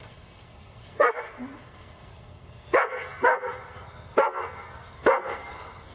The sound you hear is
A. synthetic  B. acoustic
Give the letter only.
A